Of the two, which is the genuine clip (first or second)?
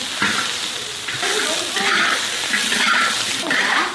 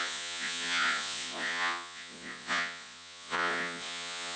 first